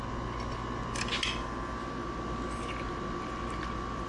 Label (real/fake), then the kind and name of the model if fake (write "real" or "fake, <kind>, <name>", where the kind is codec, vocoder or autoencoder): real